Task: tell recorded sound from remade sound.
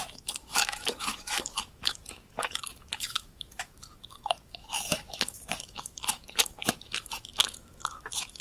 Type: remade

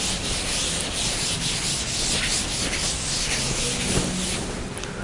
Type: recorded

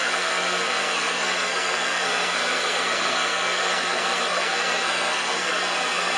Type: remade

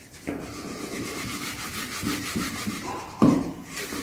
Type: remade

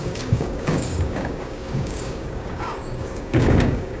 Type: remade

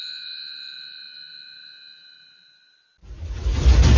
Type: recorded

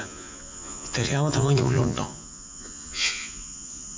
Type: remade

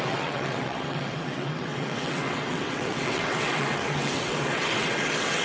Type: remade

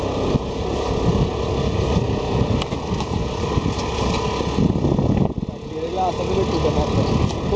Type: recorded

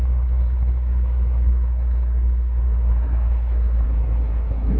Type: remade